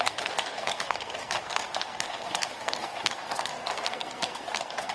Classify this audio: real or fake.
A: fake